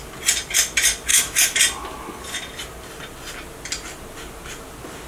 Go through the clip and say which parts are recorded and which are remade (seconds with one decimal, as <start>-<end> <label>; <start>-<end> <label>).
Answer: 0.0-1.1 recorded; 1.1-1.6 remade; 1.6-5.1 recorded